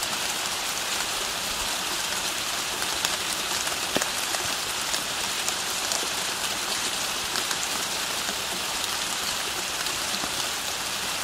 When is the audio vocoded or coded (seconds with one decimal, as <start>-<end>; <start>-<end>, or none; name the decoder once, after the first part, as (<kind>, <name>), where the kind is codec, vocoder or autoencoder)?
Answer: 0.0-4.0 (vocoder, BigVGAN v2); 5.1-11.2